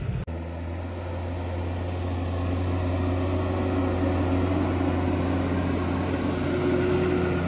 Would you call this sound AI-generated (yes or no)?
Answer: no